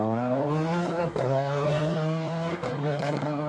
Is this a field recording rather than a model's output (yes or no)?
no